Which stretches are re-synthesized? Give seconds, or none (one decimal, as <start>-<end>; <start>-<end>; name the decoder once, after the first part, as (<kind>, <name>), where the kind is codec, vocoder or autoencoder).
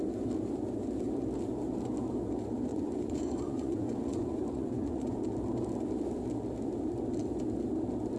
2.7-5.2 (vocoder, Vocos)